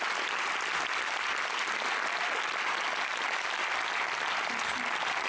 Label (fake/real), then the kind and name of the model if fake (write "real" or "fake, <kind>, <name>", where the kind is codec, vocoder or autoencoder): real